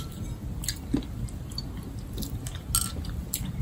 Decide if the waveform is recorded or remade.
recorded